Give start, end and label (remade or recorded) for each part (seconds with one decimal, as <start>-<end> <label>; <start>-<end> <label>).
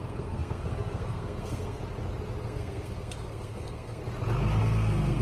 0.0-1.8 remade; 1.8-2.4 recorded; 2.4-4.0 remade; 4.0-4.6 recorded; 4.6-5.2 remade